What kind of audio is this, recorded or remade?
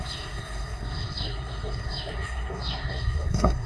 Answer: remade